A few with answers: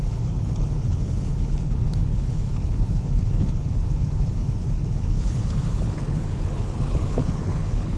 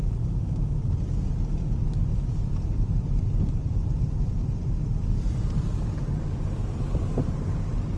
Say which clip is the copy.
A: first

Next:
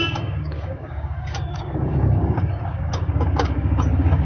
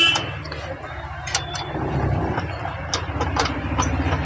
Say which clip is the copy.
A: first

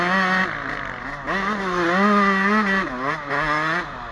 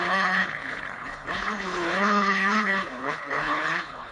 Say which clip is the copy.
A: second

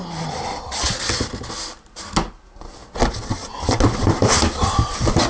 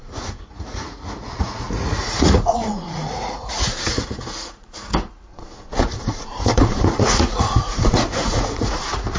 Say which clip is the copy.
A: second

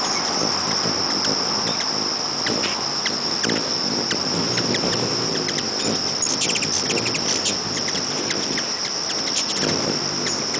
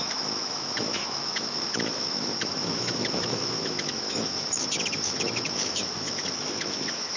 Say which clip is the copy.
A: second